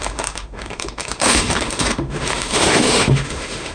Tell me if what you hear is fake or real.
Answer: fake